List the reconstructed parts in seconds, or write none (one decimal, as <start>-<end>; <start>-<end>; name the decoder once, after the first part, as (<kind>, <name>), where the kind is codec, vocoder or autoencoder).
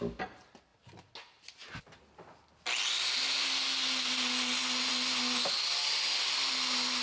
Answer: none